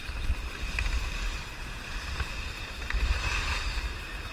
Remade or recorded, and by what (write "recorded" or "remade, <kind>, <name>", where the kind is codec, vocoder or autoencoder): remade, vocoder, BigVGAN v2